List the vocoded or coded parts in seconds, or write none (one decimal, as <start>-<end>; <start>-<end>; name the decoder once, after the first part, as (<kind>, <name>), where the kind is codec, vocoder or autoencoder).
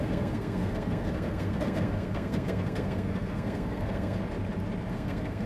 0.0-4.2 (codec, SNAC); 4.9-5.5